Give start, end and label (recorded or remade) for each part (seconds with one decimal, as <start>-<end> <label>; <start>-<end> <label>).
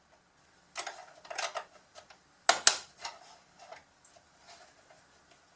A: 0.0-5.6 recorded